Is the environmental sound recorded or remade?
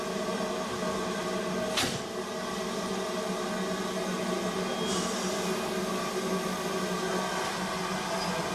recorded